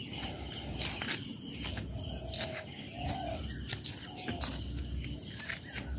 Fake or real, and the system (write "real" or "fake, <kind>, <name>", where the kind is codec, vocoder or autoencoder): real